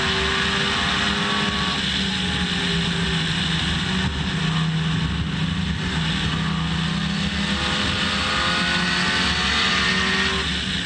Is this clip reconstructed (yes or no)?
no